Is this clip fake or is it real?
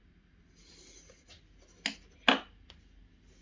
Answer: real